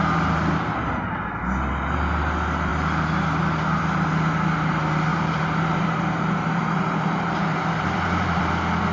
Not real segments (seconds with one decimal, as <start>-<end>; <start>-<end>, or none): 5.1-8.5